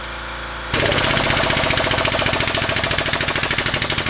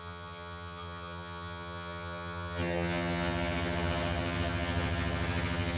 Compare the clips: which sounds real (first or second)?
first